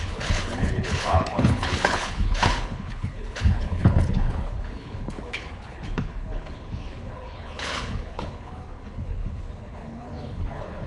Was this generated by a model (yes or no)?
yes